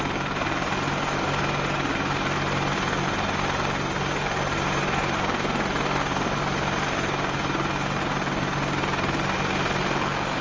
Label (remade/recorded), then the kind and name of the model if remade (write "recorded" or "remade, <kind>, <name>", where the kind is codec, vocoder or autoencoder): recorded